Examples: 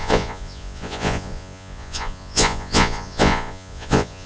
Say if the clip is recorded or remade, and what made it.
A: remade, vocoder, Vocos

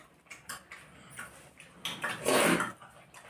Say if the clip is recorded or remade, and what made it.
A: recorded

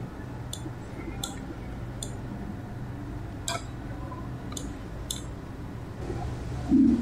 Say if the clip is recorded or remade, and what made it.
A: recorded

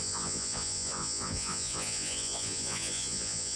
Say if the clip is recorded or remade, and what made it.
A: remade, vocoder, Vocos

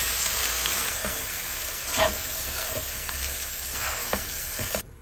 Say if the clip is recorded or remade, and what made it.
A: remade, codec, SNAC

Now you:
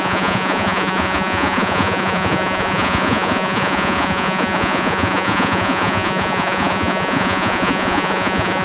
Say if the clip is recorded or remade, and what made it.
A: remade, vocoder, Vocos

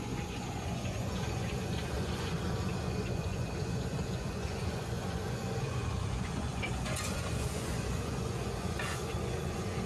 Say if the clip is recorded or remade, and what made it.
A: remade, vocoder, Vocos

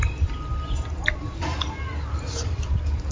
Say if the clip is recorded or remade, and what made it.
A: recorded